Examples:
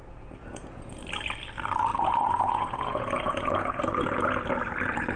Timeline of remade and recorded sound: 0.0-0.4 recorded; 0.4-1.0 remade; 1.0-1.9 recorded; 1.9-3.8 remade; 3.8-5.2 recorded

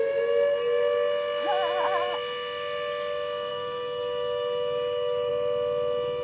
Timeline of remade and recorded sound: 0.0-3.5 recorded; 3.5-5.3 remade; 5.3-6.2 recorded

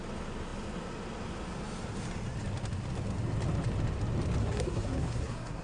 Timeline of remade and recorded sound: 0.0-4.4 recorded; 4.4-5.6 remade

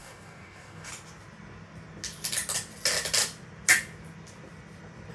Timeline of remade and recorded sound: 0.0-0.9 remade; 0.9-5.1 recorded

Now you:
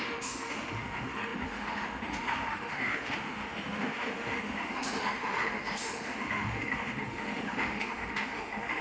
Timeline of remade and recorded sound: 0.0-8.8 remade